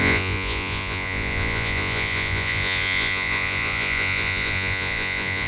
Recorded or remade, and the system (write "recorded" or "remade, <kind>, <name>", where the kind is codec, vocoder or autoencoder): remade, vocoder, Vocos